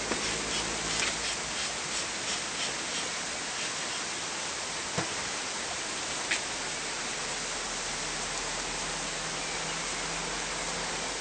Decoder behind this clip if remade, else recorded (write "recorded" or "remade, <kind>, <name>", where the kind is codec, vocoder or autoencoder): recorded